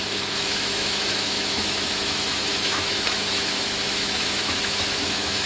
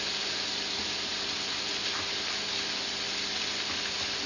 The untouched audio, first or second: second